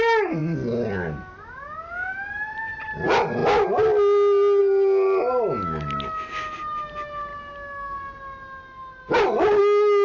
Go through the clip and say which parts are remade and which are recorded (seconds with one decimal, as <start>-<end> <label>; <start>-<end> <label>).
0.0-10.0 recorded